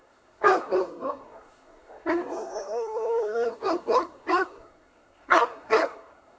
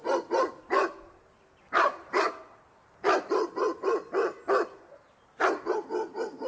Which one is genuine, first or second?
second